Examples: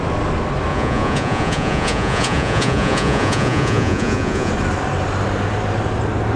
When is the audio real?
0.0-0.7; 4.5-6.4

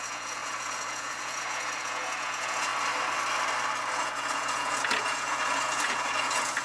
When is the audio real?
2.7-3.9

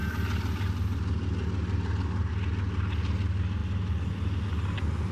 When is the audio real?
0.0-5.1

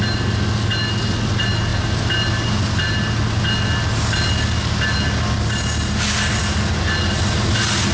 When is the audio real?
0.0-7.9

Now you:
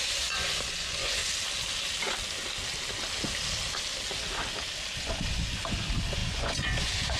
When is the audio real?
1.2-5.0

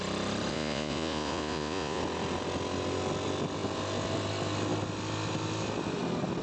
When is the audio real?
0.0-0.5; 2.0-6.4

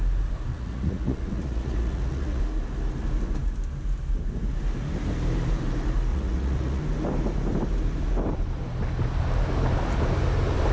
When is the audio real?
0.0-0.5; 2.4-6.1; 6.8-10.7

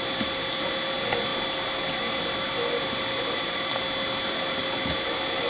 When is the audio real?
0.0-5.5